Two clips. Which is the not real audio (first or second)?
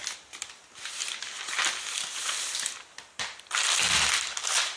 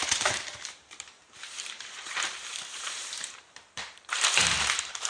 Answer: second